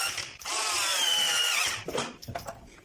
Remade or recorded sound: remade